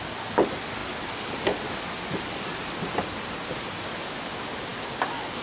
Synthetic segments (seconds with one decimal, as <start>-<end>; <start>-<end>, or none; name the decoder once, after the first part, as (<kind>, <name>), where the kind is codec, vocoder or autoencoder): none